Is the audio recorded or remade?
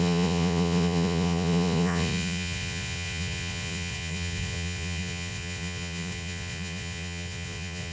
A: remade